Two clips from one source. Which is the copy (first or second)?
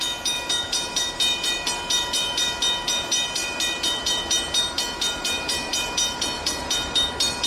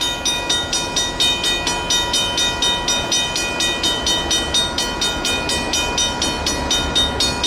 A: first